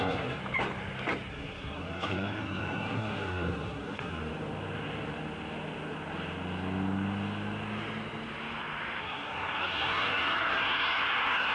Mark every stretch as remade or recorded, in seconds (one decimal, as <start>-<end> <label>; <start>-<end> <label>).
0.0-0.4 remade; 0.4-1.3 recorded; 1.3-4.2 remade; 4.2-9.0 recorded; 9.0-11.5 remade